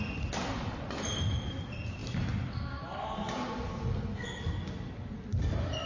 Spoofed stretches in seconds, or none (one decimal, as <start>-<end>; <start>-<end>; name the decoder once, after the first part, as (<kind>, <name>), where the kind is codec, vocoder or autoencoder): none